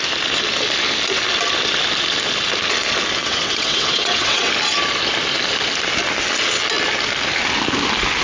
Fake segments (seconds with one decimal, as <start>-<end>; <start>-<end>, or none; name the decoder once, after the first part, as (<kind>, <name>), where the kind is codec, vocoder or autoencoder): 3.2-4.5 (vocoder, WaveNeXt)